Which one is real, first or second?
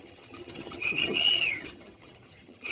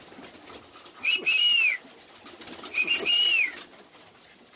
second